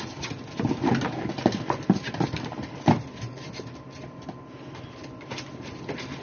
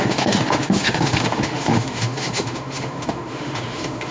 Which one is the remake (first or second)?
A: second